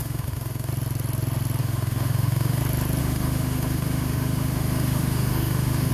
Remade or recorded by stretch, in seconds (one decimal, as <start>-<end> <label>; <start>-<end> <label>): 0.0-0.7 remade; 0.7-1.6 recorded; 1.6-2.6 remade; 2.6-3.0 recorded; 3.0-5.9 remade